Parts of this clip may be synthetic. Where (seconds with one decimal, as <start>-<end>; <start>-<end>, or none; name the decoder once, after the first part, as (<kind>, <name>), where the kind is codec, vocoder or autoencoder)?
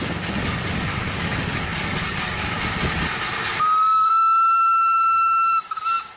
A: 0.9-2.6 (codec, DAC); 4.7-5.8